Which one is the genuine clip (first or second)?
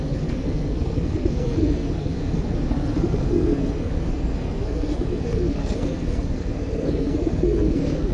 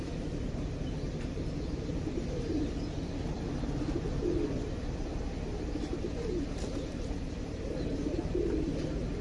second